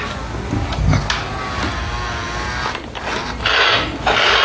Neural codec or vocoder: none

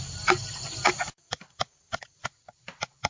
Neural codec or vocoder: vocoder, BigVGAN v2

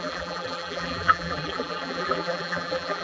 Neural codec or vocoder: vocoder, BigVGAN v2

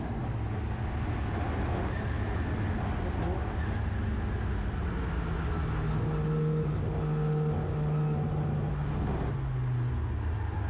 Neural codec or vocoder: none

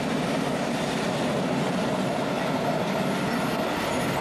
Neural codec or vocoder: none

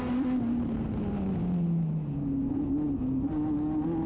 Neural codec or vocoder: none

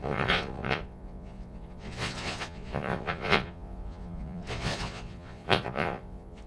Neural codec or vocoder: vocoder, Vocos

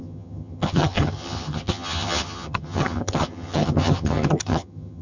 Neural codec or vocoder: vocoder, HiFi-GAN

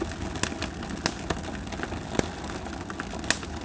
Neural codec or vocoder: none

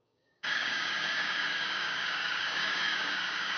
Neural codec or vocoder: codec, DAC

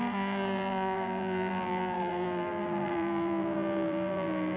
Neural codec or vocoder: vocoder, BigVGAN v2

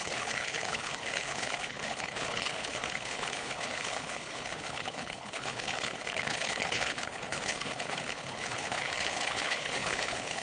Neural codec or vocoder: codec, HILCodec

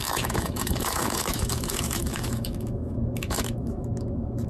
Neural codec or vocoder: autoencoder, DAC-VAE